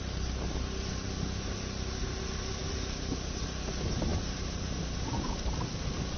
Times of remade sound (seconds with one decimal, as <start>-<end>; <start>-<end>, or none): 2.6-3.4; 4.1-5.0